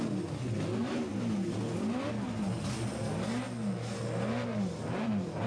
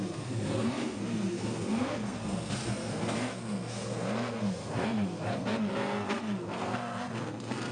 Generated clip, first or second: second